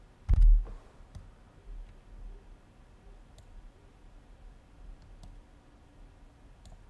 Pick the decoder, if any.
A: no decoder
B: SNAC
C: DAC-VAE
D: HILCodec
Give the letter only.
A